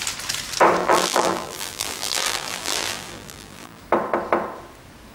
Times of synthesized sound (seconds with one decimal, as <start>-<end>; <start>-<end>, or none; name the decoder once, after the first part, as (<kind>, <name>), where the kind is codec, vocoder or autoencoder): 0.8-3.8 (vocoder, BigVGAN v2)